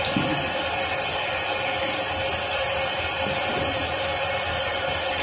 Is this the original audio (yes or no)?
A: yes